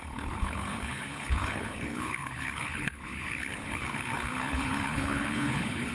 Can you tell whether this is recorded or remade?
remade